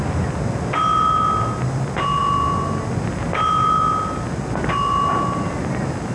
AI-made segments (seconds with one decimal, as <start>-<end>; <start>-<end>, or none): none